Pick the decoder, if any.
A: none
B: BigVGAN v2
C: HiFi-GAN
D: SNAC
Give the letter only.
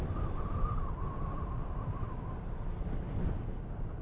A